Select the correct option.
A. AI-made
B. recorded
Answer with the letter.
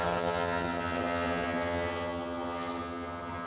A